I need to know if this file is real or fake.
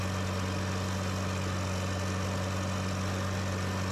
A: real